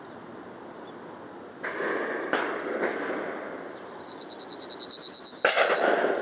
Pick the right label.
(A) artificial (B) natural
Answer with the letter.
B